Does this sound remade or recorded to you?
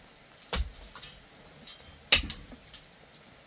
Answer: recorded